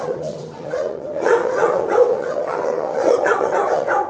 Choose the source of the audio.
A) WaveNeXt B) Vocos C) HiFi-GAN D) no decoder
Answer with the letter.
A